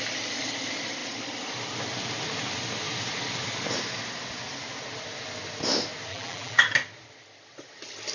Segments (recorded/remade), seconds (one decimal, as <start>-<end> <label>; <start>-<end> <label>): 0.0-6.1 recorded; 6.1-6.6 remade; 6.6-8.1 recorded